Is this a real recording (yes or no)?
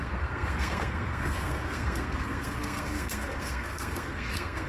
no